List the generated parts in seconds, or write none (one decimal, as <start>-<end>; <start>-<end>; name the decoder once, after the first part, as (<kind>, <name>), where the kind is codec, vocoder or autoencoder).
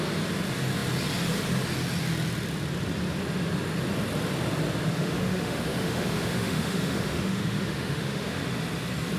4.9-8.4 (autoencoder, DAC-VAE)